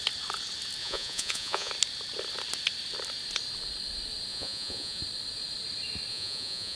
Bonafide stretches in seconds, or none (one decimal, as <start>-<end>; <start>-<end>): 0.0-0.8; 1.7-4.3; 5.0-6.1